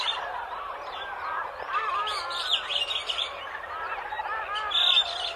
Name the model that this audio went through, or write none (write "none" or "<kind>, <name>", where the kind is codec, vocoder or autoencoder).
none